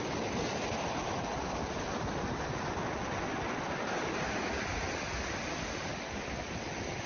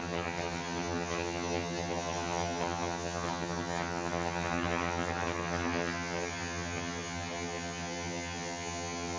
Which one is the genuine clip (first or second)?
first